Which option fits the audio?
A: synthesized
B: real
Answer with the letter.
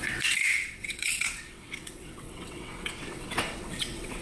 A